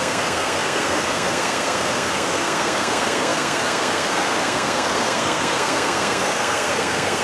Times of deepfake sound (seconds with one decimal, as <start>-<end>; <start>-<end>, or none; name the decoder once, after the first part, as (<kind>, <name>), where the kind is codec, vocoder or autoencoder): 0.0-7.2 (codec, SNAC)